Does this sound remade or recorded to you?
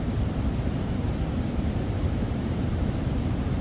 remade